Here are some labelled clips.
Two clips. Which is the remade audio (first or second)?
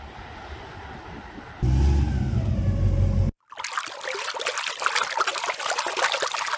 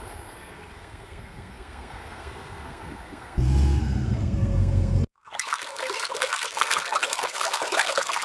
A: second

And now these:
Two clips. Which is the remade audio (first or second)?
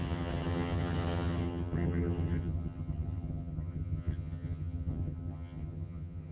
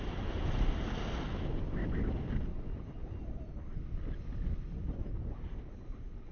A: first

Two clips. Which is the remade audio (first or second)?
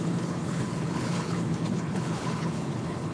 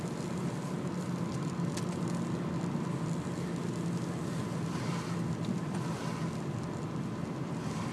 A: first